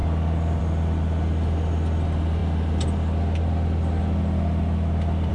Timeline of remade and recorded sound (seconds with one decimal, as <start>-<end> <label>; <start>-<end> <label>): 0.0-5.3 recorded